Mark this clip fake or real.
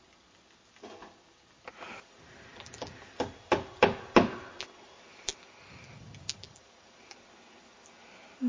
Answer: real